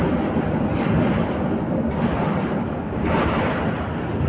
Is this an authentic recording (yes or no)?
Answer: yes